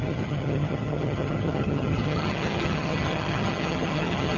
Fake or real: fake